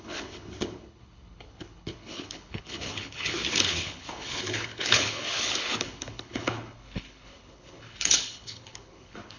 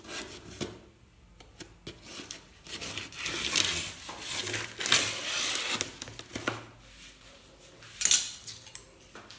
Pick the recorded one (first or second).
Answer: second